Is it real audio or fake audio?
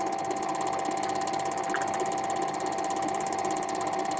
real